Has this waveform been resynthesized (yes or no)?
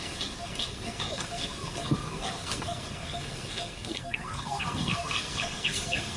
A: yes